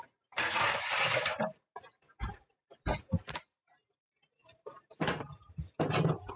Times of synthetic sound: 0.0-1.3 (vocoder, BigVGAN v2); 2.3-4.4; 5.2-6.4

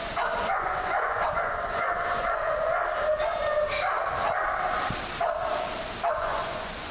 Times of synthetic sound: 0.0-2.8 (vocoder, Vocos); 6.1-6.9

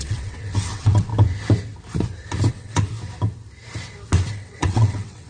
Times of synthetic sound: 0.0-1.1 (vocoder, WaveNeXt); 2.5-2.9; 4.3-5.3